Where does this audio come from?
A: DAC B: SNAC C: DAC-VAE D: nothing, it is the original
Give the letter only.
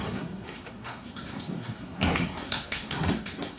B